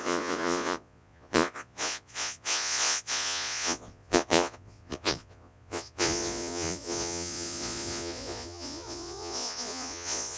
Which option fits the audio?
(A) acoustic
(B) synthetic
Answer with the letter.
B